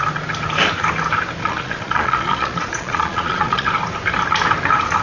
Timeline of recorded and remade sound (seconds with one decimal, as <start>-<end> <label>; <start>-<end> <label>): 0.0-1.4 recorded; 1.4-3.7 remade; 3.7-5.0 recorded